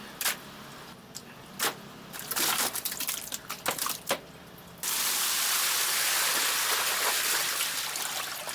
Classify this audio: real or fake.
real